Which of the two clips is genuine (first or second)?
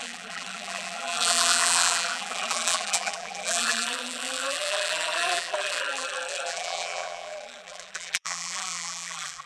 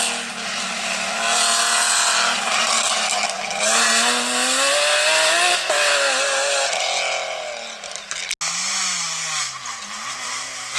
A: second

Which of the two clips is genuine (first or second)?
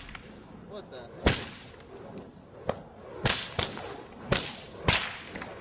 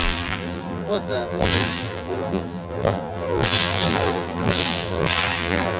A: first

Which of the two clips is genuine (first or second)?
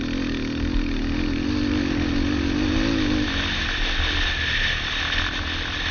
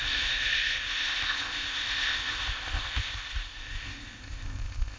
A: first